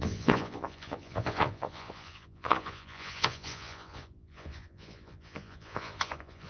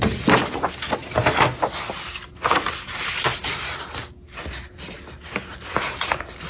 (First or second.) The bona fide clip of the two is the second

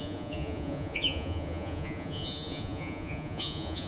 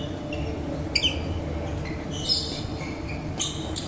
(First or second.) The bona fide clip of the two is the second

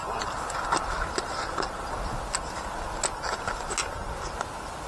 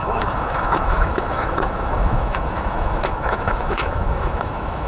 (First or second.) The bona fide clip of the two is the first